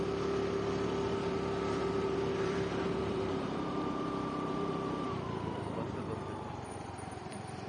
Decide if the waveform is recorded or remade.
remade